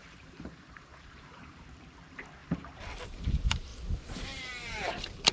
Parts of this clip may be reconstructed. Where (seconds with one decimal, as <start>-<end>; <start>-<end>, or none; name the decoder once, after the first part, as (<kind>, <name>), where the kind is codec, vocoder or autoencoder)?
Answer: 0.0-3.7 (vocoder, BigVGAN v2); 4.4-5.3